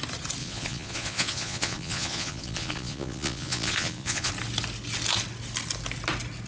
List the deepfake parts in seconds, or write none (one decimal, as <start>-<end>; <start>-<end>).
0.4-4.3

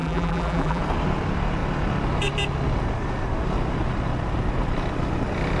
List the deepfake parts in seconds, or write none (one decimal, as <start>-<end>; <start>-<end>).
0.0-0.8

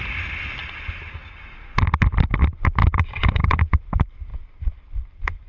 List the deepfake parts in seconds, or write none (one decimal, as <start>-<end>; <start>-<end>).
none

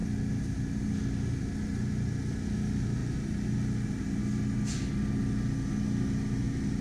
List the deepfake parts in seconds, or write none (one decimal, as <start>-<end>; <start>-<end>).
none

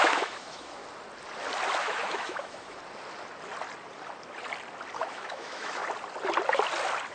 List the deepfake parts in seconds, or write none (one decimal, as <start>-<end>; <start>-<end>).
0.0-0.8; 1.8-2.8; 5.0-5.8

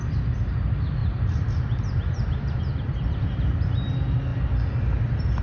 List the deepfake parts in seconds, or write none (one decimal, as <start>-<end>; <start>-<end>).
1.0-3.4

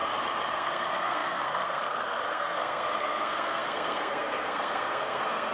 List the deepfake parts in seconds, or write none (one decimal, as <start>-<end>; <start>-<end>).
0.5-5.5